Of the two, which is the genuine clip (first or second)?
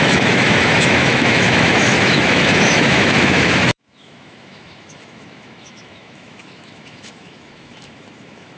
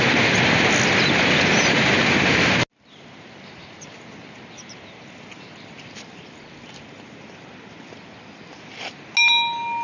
second